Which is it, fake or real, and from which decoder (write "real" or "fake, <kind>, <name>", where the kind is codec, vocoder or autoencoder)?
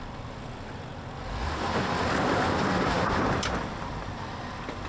fake, vocoder, BigVGAN v2